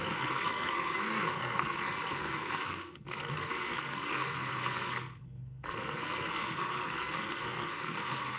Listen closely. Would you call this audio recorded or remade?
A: remade